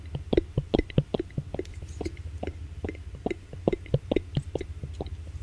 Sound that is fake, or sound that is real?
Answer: real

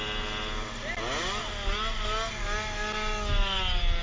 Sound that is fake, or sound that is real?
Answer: real